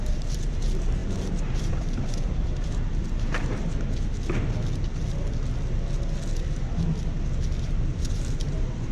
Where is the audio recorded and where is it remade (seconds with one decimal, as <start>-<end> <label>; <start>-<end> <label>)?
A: 0.0-3.6 remade; 3.6-7.6 recorded; 7.6-8.9 remade